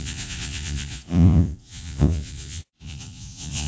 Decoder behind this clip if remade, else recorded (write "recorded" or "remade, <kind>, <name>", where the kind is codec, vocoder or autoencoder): remade, vocoder, Vocos